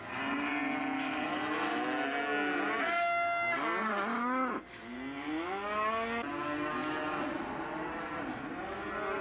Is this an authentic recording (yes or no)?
yes